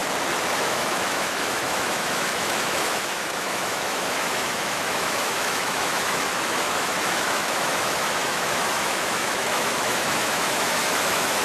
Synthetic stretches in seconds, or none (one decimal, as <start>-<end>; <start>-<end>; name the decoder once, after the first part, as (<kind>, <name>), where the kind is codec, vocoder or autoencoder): 0.6-11.4 (autoencoder, DAC-VAE)